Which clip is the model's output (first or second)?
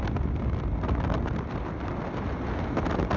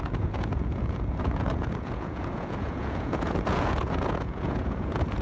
second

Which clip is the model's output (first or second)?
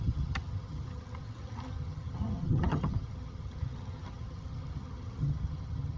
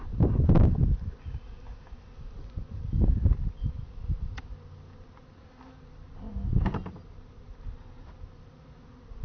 first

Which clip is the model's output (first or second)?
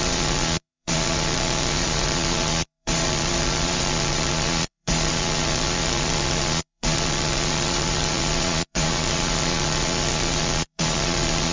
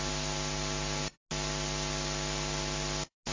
first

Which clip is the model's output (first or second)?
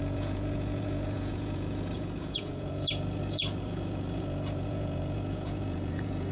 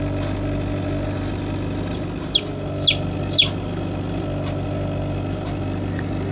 first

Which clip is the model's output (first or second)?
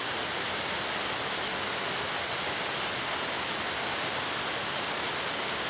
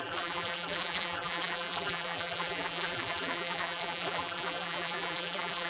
second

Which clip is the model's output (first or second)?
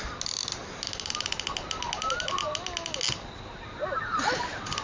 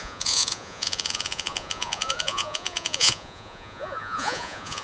second